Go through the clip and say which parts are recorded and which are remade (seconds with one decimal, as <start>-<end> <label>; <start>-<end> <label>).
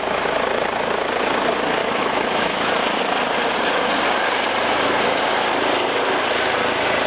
0.0-1.8 recorded; 1.8-2.7 remade; 2.7-7.1 recorded